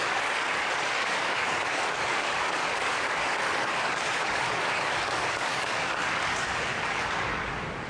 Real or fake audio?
fake